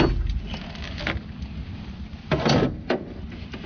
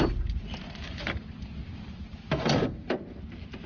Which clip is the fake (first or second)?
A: second